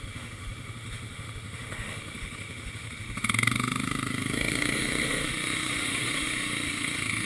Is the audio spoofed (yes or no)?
yes